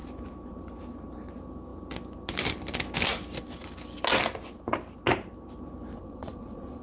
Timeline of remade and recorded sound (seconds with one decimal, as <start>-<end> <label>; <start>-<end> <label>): 0.0-5.9 recorded; 5.9-6.8 remade